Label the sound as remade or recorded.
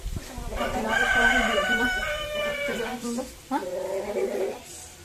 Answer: remade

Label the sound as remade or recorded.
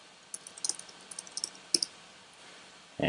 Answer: recorded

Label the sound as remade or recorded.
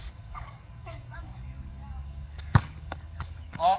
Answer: remade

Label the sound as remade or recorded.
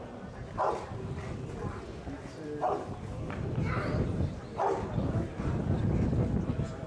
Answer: recorded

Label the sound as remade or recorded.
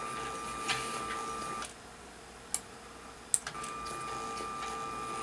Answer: recorded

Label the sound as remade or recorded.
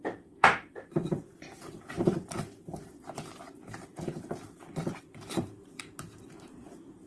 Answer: remade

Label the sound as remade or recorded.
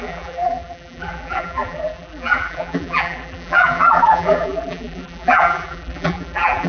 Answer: remade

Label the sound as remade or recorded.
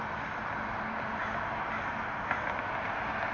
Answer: recorded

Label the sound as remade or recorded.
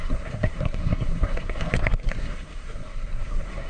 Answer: remade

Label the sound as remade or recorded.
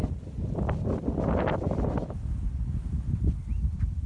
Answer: recorded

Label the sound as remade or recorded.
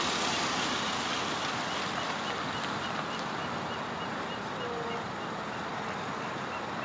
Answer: recorded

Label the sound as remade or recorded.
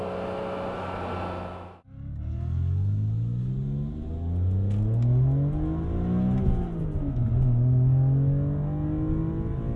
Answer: recorded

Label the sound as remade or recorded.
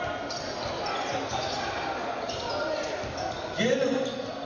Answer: recorded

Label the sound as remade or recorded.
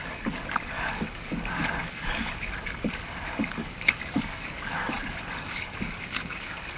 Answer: remade